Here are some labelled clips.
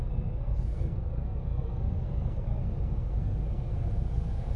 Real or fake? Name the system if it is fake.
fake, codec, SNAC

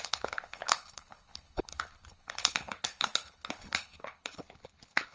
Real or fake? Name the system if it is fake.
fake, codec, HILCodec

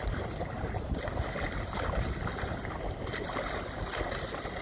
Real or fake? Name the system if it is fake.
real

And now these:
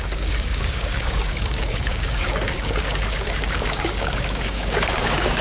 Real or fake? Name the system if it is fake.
fake, codec, DAC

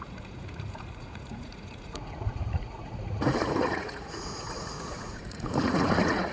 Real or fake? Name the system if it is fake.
fake, vocoder, Vocos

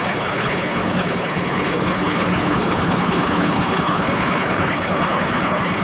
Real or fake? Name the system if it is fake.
fake, codec, HILCodec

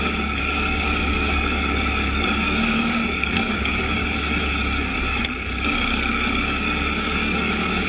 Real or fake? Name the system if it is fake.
fake, codec, DAC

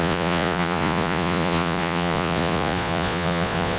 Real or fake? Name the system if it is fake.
fake, vocoder, Vocos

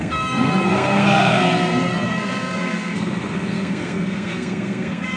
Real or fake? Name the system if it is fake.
fake, codec, SNAC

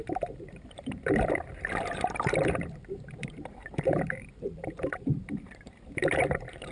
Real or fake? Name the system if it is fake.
fake, vocoder, BigVGAN v2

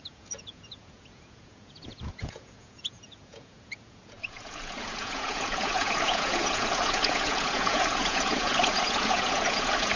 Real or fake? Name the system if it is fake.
fake, vocoder, Vocos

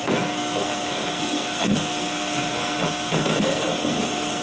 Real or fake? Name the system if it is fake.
fake, codec, SNAC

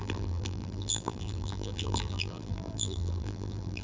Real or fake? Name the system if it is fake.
fake, vocoder, BigVGAN v2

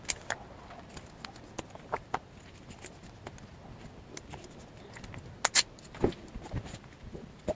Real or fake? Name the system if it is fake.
real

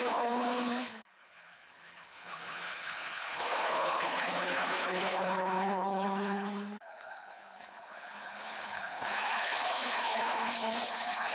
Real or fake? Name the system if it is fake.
fake, codec, HILCodec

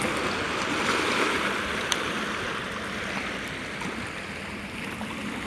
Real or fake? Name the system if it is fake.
real